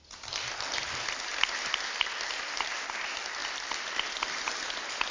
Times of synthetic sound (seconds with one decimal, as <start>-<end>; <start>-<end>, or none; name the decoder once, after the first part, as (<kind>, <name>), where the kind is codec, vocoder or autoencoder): none